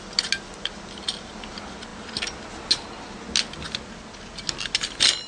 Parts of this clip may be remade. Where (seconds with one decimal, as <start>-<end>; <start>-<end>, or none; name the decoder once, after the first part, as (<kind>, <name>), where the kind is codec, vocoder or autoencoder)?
none

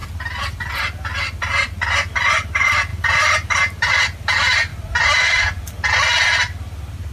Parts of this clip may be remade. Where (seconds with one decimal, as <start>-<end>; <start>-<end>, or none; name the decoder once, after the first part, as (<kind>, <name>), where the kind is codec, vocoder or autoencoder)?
2.9-3.9 (vocoder, BigVGAN v2)

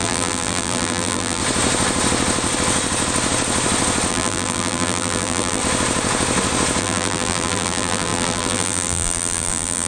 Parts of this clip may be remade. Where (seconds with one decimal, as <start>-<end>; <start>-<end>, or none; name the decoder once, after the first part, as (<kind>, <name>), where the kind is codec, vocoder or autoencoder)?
0.0-1.4 (vocoder, BigVGAN v2); 4.1-5.6; 6.8-9.9

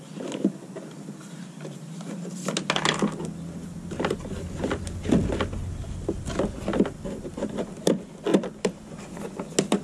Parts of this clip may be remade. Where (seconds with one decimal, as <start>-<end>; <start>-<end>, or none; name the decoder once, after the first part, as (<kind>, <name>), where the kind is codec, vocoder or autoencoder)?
7.3-7.9 (vocoder, BigVGAN v2); 8.3-9.3

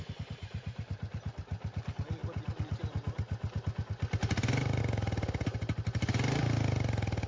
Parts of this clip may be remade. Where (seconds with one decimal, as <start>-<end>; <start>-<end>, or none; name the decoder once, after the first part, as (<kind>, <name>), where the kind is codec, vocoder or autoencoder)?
0.4-1.1 (vocoder, BigVGAN v2)

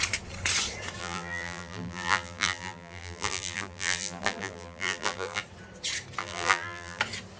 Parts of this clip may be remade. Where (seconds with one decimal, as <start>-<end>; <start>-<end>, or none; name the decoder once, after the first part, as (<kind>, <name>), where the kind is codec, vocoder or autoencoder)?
1.0-5.4 (vocoder, BigVGAN v2); 6.2-7.0